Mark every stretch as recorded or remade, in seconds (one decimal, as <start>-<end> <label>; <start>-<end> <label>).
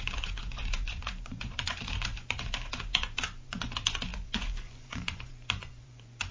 0.0-6.3 remade